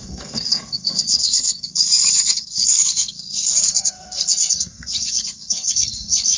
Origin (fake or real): fake